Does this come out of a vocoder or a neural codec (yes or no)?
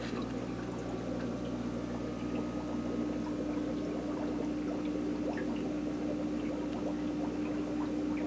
no